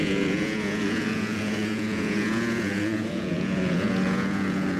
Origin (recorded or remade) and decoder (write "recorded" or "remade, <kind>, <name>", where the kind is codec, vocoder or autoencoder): remade, vocoder, Vocos